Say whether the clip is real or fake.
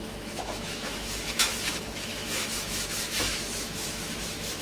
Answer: fake